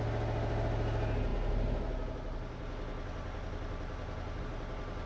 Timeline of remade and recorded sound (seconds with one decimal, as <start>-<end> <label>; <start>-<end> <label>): 0.0-5.1 recorded